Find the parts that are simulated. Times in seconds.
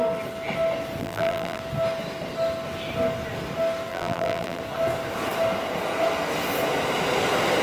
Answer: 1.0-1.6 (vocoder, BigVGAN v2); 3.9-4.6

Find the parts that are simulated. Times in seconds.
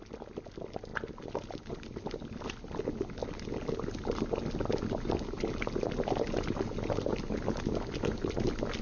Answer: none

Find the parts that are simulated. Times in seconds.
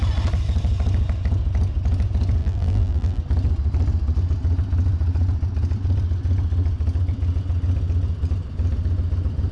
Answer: 2.4-3.2 (vocoder, BigVGAN v2)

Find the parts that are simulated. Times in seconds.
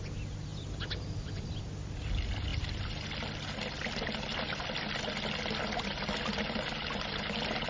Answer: 0.5-1.6 (vocoder, BigVGAN v2)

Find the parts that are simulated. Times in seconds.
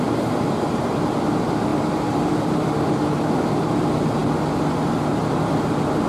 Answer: 1.7-3.7 (vocoder, BigVGAN v2)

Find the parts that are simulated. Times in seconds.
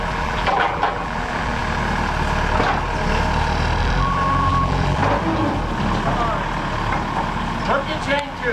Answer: 0.0-1.6 (vocoder, BigVGAN v2); 3.8-5.0; 8.0-8.5